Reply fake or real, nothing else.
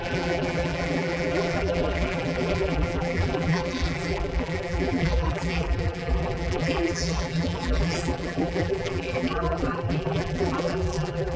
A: fake